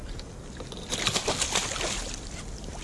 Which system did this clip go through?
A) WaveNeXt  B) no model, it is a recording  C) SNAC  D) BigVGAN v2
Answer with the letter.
B